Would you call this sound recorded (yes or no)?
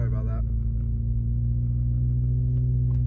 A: yes